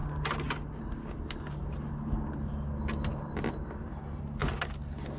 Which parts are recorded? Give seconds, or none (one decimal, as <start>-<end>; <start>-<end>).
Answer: 0.0-5.2